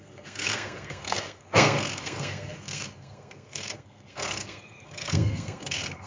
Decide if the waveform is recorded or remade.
remade